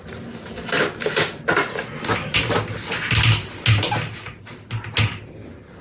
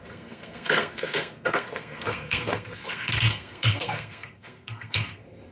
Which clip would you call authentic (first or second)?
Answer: first